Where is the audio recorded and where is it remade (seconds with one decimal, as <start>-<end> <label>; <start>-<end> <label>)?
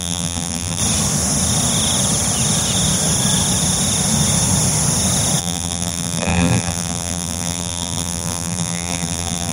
0.0-0.8 remade; 0.8-5.4 recorded; 5.4-9.5 remade